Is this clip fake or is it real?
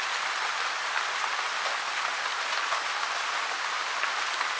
real